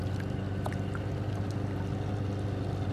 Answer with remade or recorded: recorded